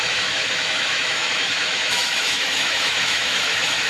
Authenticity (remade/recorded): remade